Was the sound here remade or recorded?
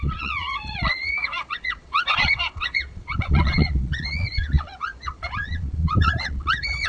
remade